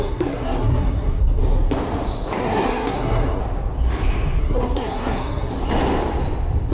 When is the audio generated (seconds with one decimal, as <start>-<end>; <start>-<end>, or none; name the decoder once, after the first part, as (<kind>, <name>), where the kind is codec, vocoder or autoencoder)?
0.0-1.4 (codec, SNAC); 2.4-3.4; 4.4-5.5